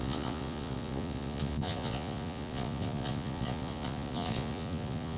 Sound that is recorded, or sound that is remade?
remade